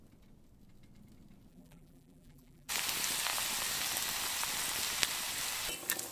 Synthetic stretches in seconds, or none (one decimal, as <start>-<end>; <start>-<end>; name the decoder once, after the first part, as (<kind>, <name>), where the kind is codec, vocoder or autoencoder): 1.5-2.7 (vocoder, BigVGAN v2)